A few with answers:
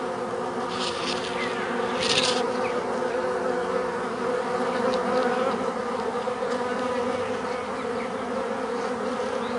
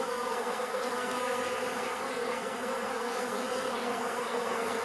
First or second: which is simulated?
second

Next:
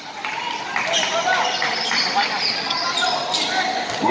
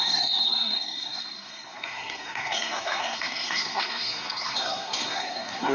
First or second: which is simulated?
second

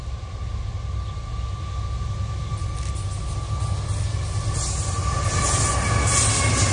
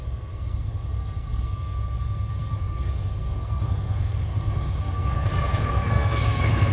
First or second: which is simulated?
second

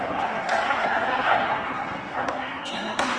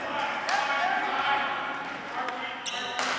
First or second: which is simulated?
first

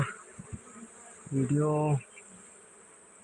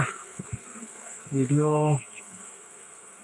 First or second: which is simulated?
second